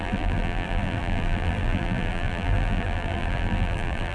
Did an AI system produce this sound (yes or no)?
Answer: yes